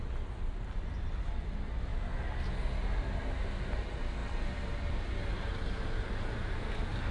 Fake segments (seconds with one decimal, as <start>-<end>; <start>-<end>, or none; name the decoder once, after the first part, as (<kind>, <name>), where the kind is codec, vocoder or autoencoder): none